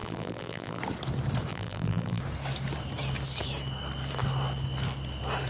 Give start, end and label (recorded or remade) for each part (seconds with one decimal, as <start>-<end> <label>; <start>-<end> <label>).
0.0-0.8 remade; 0.8-1.5 recorded; 1.5-2.2 remade; 2.2-5.5 recorded